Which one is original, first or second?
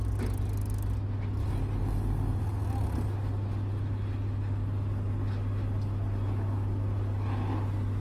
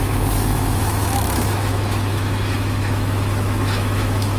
first